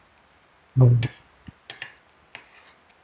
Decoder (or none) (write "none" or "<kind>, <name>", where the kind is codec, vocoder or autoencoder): none